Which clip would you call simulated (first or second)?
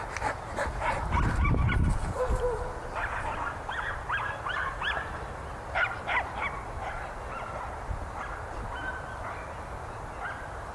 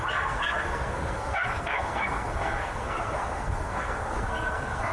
second